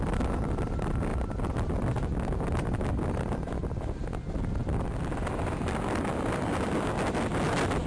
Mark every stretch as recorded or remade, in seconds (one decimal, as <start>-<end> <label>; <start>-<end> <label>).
0.0-7.9 recorded